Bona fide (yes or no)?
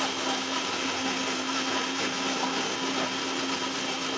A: yes